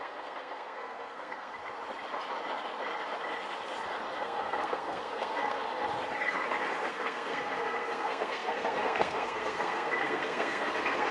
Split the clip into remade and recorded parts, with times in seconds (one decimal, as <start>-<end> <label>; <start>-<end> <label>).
0.0-1.6 remade; 1.6-4.2 recorded; 4.2-5.6 remade; 5.6-6.9 recorded; 6.9-11.1 remade